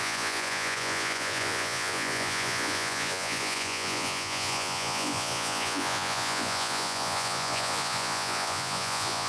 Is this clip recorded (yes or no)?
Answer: no